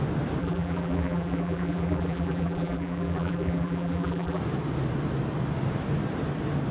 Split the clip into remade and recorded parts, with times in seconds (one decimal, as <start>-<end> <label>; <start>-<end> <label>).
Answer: 0.0-0.4 recorded; 0.4-4.4 remade; 4.4-6.7 recorded